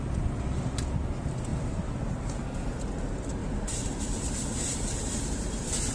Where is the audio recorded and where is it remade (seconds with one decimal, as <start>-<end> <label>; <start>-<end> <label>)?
0.0-3.4 recorded; 3.4-4.0 remade; 4.0-4.4 recorded; 4.4-5.4 remade; 5.4-5.9 recorded